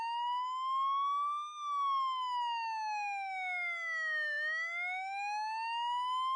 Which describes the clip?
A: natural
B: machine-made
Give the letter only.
A